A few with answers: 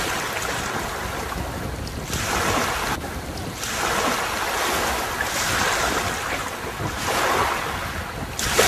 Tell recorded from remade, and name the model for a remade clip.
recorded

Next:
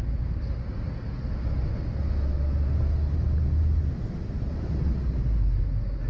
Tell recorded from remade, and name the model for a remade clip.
recorded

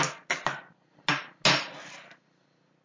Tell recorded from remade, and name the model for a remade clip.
recorded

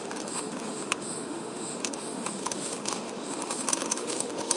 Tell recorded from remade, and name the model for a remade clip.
remade, autoencoder, DAC-VAE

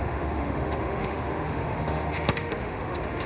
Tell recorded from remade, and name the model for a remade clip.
remade, autoencoder, DAC-VAE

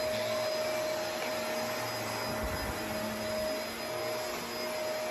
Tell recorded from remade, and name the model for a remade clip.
recorded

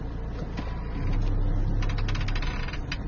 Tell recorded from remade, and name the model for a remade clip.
recorded